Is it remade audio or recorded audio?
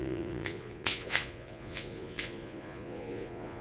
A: remade